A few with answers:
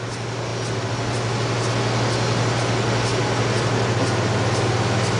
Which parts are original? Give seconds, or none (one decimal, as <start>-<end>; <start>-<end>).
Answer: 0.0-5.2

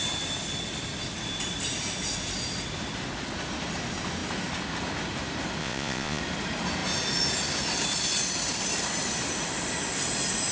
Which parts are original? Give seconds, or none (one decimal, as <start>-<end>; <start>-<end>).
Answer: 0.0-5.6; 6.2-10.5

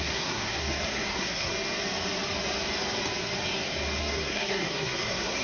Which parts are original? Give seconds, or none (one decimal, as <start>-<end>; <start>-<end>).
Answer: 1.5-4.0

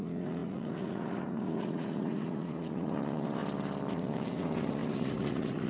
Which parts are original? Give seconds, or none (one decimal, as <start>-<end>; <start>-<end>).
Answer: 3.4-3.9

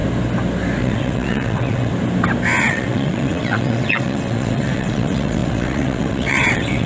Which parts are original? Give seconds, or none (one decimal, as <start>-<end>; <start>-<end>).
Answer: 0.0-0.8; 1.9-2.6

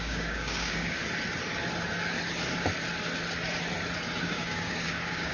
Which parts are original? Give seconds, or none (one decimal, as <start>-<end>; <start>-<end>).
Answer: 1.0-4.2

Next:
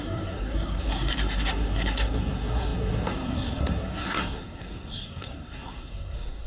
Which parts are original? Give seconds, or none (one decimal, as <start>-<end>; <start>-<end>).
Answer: none

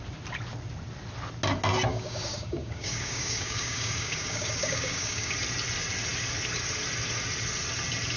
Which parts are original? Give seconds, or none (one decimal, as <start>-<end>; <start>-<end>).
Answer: 0.0-1.9; 5.3-8.2